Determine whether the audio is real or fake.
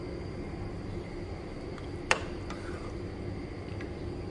real